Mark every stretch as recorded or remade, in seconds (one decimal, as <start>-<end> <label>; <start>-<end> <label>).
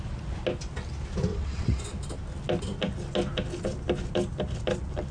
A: 0.0-1.3 recorded; 1.3-1.8 remade; 1.8-5.1 recorded